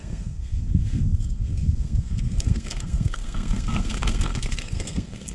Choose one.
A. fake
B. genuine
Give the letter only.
A